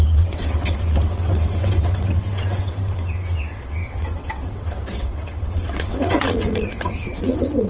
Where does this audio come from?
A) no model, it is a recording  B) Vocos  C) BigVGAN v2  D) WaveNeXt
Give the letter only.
D